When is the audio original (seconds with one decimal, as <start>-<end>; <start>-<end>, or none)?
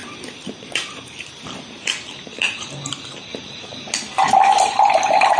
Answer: none